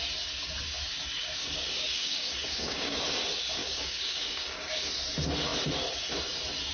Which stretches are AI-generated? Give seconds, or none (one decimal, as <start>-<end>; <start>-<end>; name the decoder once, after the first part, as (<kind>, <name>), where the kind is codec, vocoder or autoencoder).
1.2-3.0 (codec, DAC); 3.6-4.9